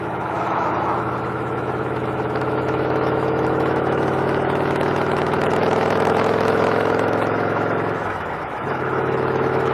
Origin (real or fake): fake